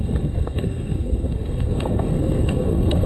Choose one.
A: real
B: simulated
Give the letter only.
B